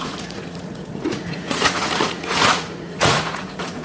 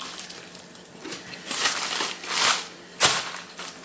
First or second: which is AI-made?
first